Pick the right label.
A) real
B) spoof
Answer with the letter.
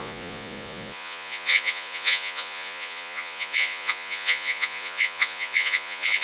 B